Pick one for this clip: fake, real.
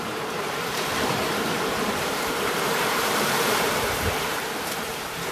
fake